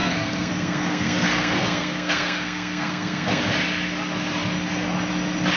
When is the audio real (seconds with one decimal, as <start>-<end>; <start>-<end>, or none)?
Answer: 3.4-5.6